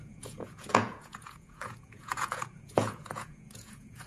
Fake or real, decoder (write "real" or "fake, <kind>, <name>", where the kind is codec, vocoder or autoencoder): fake, vocoder, Vocos